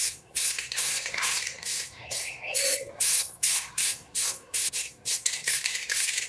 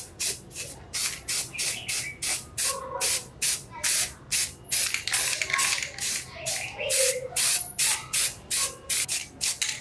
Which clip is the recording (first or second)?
second